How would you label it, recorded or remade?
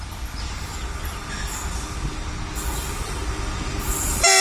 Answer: recorded